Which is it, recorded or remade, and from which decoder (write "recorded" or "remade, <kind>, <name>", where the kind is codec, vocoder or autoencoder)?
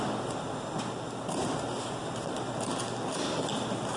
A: recorded